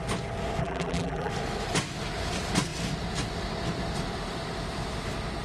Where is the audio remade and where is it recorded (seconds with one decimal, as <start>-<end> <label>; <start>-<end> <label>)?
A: 0.0-0.6 recorded; 0.6-1.3 remade; 1.3-5.4 recorded